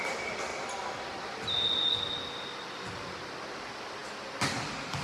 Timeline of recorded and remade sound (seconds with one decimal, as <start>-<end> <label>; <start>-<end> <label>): 0.0-5.0 recorded

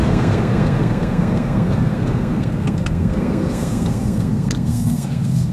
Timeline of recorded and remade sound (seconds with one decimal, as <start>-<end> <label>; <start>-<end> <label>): 0.0-5.5 remade

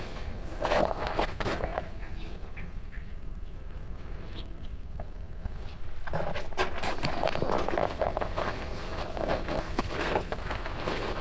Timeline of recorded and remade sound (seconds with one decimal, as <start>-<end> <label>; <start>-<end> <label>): 0.0-5.8 remade; 5.8-7.8 recorded; 7.8-11.2 remade

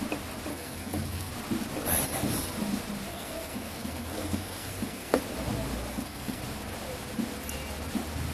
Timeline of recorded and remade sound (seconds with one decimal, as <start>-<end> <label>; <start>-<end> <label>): 0.0-0.5 recorded; 0.5-1.3 remade; 1.3-3.1 recorded; 3.1-5.2 remade; 5.2-5.9 recorded; 5.9-6.4 remade; 6.4-8.3 recorded

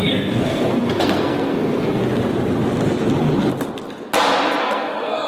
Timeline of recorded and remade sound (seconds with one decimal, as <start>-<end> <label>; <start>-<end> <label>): 0.0-2.0 remade; 2.0-4.6 recorded; 4.6-5.3 remade

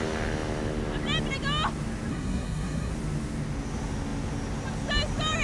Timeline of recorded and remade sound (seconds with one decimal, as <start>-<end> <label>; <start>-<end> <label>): 0.0-2.1 recorded; 2.1-2.9 remade; 2.9-5.4 recorded

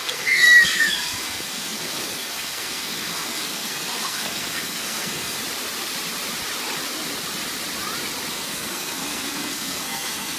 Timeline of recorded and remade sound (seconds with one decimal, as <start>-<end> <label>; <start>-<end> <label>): 0.0-5.4 remade; 5.4-8.3 recorded; 8.3-10.4 remade

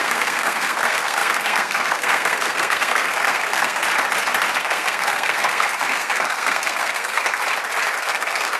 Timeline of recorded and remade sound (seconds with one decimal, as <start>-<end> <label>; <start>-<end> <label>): 0.0-3.8 remade; 3.8-4.6 recorded; 4.6-7.4 remade; 7.4-8.0 recorded; 8.0-8.6 remade